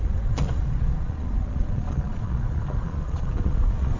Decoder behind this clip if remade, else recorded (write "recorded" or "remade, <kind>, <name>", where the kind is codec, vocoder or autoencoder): remade, vocoder, Vocos